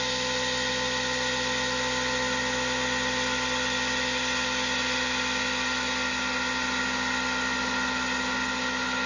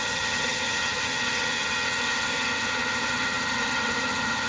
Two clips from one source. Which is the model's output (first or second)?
second